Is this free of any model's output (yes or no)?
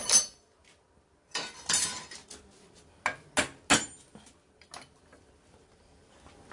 yes